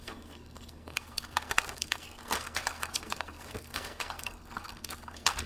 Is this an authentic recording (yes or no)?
no